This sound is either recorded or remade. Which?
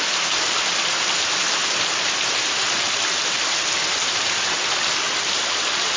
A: recorded